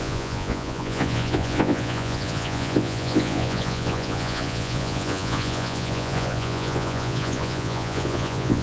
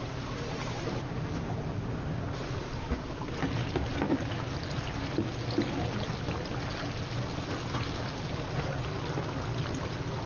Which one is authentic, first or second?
second